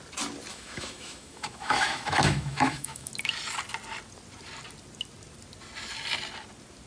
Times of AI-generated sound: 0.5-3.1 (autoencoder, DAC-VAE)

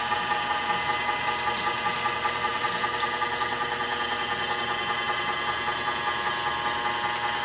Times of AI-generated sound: none

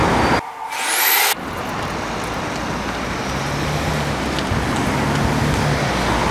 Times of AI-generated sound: none